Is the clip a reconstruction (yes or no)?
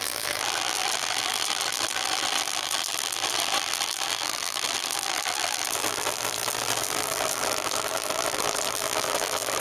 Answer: yes